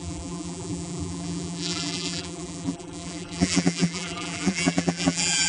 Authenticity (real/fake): fake